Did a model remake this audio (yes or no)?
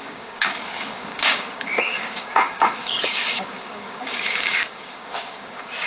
yes